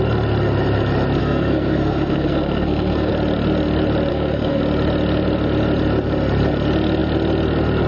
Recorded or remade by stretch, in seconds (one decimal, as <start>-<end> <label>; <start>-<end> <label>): 0.0-1.2 recorded; 1.2-3.1 remade; 3.1-4.1 recorded; 4.1-4.6 remade; 4.6-7.9 recorded

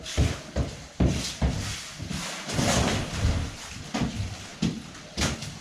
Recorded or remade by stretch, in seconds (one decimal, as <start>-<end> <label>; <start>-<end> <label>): 0.0-5.6 recorded

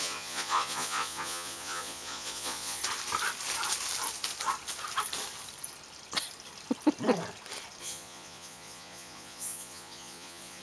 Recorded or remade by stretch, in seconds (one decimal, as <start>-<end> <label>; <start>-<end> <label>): 0.0-2.8 remade; 2.8-7.8 recorded; 7.8-10.6 remade

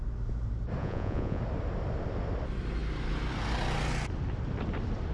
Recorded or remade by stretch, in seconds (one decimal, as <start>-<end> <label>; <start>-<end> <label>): 0.0-0.8 recorded; 0.8-1.4 remade; 1.4-5.1 recorded

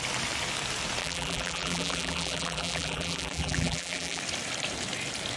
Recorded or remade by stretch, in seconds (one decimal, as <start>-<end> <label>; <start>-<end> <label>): 0.0-1.0 recorded; 1.0-4.2 remade; 4.2-5.4 recorded

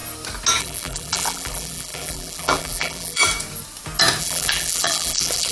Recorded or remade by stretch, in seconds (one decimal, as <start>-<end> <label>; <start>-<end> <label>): 0.0-0.6 recorded; 0.6-3.2 remade; 3.2-4.2 recorded; 4.2-5.5 remade

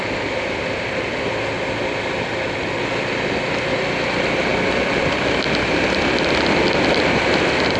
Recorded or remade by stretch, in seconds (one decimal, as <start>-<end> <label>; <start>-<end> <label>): 0.0-7.8 recorded